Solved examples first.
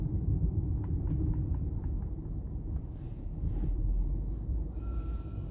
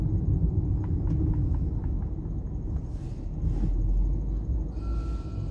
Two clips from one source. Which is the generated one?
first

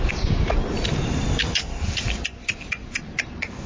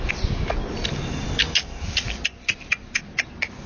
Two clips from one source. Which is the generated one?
first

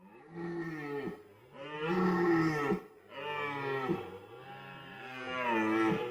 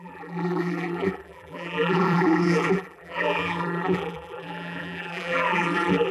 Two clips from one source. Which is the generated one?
second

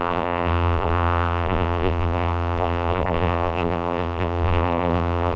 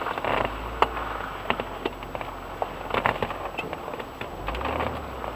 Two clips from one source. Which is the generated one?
first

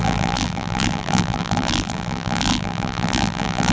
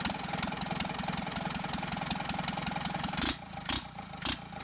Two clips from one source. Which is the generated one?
first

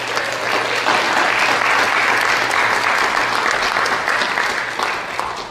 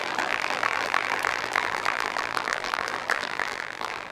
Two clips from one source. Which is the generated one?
second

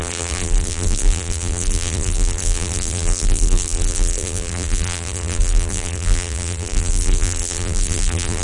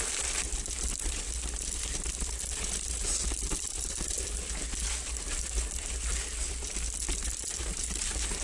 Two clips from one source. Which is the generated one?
first